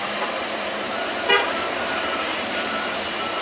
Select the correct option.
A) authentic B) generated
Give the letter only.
B